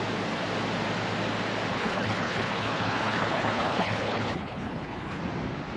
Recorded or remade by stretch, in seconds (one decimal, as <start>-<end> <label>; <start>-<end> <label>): 0.0-1.7 recorded; 1.7-5.2 remade; 5.2-5.8 recorded

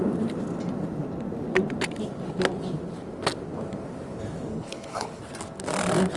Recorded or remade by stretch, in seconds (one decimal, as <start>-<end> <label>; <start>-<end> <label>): 0.0-4.5 recorded; 4.5-5.2 remade; 5.2-6.2 recorded

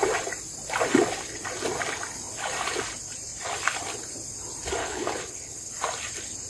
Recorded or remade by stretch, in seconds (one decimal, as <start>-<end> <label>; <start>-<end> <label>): 0.0-4.8 recorded; 4.8-5.7 remade; 5.7-6.5 recorded